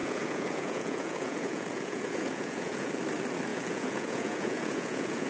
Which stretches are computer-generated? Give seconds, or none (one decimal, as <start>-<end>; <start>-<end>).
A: 0.0-2.9; 3.5-5.3